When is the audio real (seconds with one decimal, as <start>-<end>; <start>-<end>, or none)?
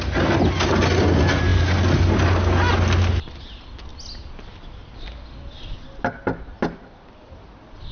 0.0-7.9